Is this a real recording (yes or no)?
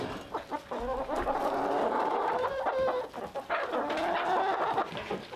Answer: yes